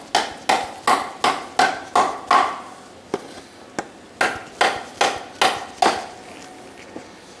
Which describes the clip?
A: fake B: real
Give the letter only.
B